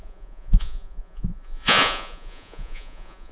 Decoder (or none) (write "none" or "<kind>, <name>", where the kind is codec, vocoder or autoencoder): vocoder, Vocos